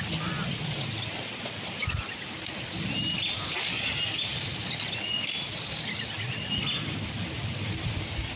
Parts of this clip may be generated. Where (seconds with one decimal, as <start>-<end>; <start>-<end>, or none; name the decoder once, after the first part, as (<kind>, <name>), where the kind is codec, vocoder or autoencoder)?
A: none